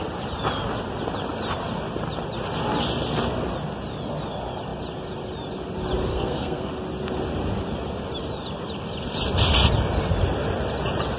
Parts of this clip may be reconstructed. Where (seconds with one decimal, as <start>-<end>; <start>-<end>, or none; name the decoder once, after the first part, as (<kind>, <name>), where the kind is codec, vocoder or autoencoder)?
6.1-6.7 (codec, SNAC)